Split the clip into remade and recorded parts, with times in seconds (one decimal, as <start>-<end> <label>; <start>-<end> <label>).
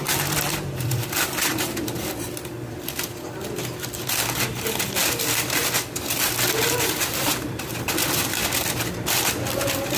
0.0-8.4 remade; 8.4-8.9 recorded; 8.9-10.0 remade